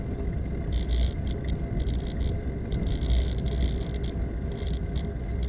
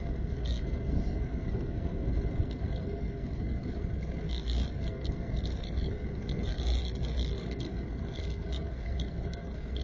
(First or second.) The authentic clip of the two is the first